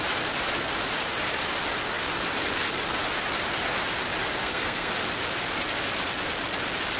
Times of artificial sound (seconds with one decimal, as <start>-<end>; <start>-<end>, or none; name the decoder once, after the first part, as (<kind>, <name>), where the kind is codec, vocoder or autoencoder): 4.4-4.9 (codec, SNAC)

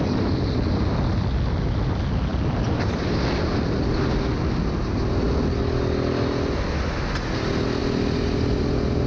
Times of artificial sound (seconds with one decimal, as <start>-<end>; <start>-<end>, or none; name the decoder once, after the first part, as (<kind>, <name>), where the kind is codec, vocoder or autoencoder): none

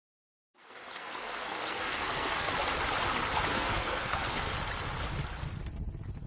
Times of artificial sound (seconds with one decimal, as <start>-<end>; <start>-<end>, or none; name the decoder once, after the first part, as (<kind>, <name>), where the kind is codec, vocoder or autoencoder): 0.6-2.5 (codec, SNAC); 3.5-4.5

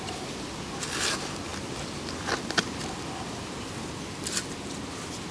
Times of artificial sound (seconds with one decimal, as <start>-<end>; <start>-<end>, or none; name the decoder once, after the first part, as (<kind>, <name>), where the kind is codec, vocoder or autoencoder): none

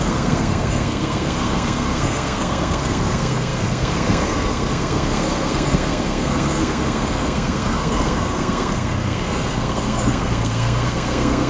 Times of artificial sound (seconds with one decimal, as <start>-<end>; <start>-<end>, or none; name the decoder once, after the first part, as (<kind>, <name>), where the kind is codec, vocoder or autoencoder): 0.0-11.5 (codec, SNAC)

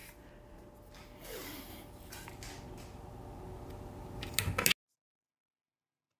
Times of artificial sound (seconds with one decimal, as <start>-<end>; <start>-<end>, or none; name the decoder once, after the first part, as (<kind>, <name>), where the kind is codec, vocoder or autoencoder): none

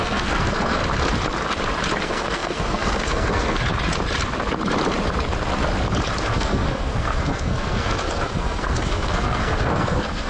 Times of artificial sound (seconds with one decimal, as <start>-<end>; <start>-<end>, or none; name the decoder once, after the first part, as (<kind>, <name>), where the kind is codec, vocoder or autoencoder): 0.0-0.8 (codec, SNAC); 2.0-3.6; 6.2-10.3

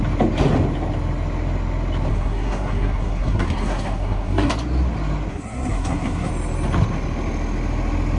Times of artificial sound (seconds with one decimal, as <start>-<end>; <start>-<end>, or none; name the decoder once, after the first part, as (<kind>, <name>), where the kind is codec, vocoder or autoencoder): 2.1-4.5 (codec, SNAC); 5.3-6.3